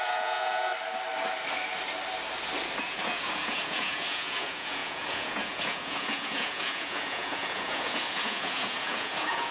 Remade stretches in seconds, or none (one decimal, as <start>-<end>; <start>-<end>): 0.0-0.7; 2.8-9.5